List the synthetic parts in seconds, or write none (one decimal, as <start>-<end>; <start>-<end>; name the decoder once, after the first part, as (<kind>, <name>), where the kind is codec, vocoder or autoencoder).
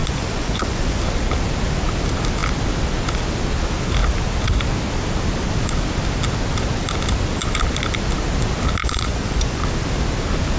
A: 0.0-1.0 (vocoder, Vocos); 8.8-9.6